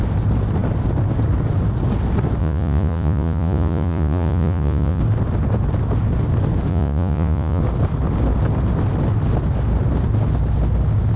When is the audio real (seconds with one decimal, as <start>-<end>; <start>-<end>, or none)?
0.0-2.4; 5.0-6.7; 7.6-11.2